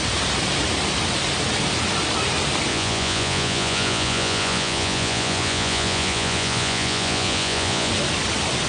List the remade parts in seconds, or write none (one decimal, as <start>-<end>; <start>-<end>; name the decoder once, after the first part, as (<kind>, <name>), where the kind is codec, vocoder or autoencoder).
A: 2.7-7.9 (vocoder, Vocos)